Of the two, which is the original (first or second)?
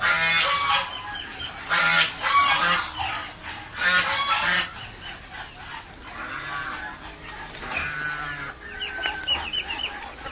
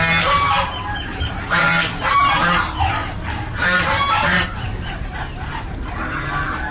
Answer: first